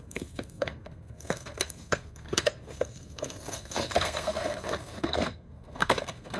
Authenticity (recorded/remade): remade